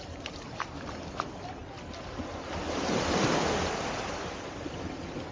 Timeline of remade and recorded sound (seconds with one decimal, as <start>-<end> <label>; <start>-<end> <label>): 0.0-5.3 recorded